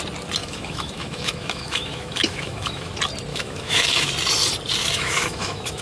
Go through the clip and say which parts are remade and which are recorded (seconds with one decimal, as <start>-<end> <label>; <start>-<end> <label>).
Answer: 0.0-0.4 recorded; 0.4-2.9 remade; 2.9-3.3 recorded; 3.3-4.1 remade; 4.1-4.8 recorded; 4.8-5.8 remade